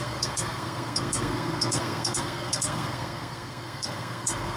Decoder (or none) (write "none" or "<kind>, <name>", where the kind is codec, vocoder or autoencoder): codec, SNAC